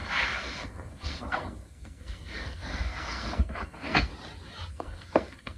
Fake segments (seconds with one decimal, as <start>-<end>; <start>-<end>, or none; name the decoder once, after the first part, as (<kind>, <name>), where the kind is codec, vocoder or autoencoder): 0.0-4.1 (codec, SNAC); 4.7-5.6